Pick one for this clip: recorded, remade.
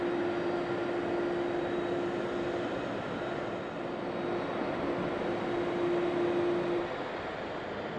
recorded